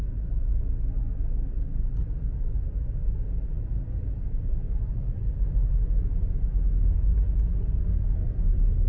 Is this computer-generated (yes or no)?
no